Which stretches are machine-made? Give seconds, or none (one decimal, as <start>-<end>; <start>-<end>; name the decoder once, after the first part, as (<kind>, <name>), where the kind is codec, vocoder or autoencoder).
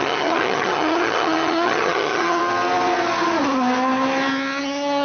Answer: 0.0-2.4 (vocoder, HiFi-GAN); 4.6-5.0